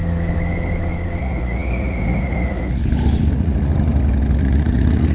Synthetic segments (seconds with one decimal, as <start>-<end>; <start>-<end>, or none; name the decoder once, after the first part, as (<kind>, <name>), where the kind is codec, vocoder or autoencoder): 1.2-2.8 (vocoder, Vocos); 3.3-3.7; 4.4-5.1